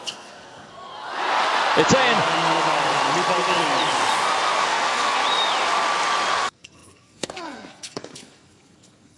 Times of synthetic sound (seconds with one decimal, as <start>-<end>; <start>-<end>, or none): 0.0-0.9; 4.6-5.2; 6.3-9.2